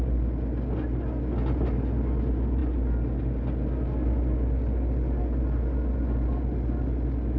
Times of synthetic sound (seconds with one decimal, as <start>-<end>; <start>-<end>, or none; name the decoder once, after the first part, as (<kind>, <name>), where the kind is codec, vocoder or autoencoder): none